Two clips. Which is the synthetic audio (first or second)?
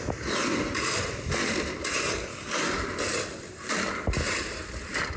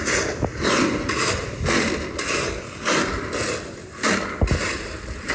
first